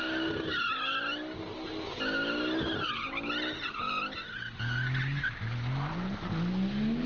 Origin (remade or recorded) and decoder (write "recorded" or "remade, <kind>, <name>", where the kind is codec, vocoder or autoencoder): recorded